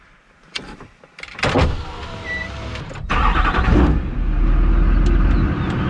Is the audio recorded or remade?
recorded